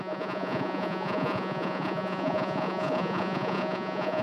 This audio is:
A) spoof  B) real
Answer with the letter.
A